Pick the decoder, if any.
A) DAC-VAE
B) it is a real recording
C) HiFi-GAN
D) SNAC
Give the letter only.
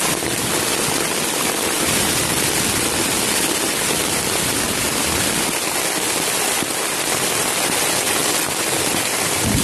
B